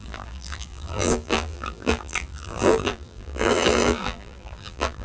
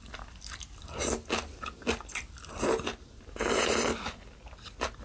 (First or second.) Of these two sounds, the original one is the second